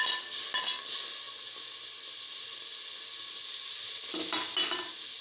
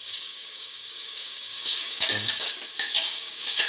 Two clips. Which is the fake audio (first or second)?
second